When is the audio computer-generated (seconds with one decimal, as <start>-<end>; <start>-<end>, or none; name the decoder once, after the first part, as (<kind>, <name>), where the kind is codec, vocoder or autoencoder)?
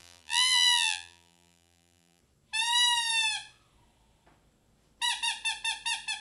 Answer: 0.0-2.2 (vocoder, BigVGAN v2)